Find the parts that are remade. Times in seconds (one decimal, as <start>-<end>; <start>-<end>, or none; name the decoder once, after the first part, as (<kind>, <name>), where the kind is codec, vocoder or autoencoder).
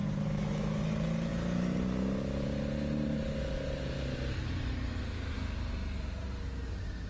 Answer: 0.0-0.8 (autoencoder, DAC-VAE)